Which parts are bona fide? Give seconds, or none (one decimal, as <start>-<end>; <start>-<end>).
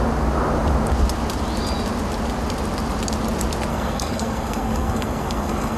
0.0-3.7